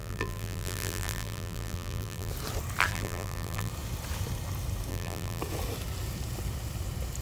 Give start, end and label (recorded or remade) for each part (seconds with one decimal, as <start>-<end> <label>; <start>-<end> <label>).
0.0-2.3 remade; 2.3-2.9 recorded; 2.9-3.7 remade; 3.7-4.9 recorded; 4.9-5.4 remade; 5.4-7.2 recorded